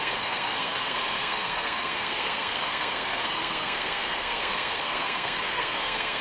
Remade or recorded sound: remade